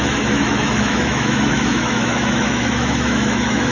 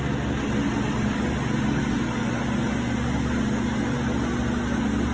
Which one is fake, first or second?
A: first